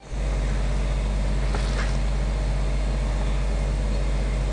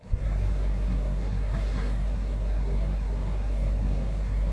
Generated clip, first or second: second